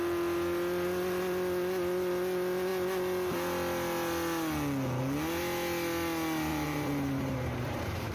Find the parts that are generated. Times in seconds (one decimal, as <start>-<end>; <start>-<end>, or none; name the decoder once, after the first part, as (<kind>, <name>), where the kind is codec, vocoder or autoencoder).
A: 6.5-8.1 (vocoder, BigVGAN v2)